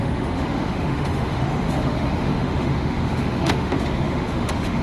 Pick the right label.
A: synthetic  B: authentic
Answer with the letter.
A